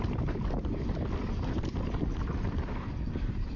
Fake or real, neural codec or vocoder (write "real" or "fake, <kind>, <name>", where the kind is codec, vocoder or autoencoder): real